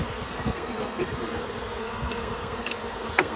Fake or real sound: fake